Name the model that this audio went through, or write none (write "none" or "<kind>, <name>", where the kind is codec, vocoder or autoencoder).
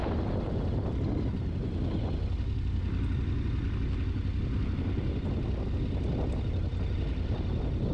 none